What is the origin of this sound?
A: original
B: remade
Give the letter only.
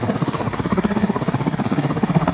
B